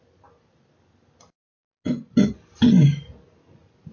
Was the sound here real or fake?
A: real